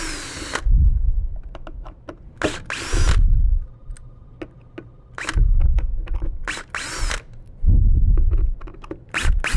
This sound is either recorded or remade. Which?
recorded